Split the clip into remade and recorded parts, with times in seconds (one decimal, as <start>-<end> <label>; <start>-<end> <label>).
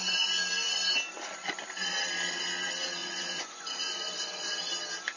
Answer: 0.0-3.0 recorded; 3.0-4.6 remade; 4.6-5.2 recorded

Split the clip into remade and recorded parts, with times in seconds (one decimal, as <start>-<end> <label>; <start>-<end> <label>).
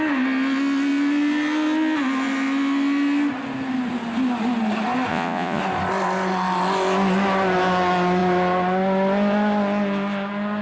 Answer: 0.0-5.1 recorded; 5.1-5.6 remade; 5.6-10.6 recorded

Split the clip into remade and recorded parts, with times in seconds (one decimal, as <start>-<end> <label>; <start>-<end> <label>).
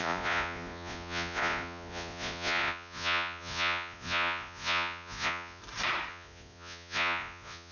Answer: 0.0-5.6 remade; 5.6-6.1 recorded; 6.1-7.7 remade